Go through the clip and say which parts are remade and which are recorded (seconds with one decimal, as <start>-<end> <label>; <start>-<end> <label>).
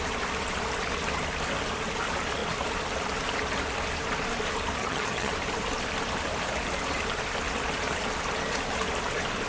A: 0.0-4.8 recorded; 4.8-5.3 remade; 5.3-9.5 recorded